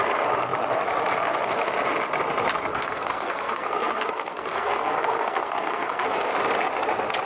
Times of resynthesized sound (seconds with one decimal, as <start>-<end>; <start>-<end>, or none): 2.7-6.3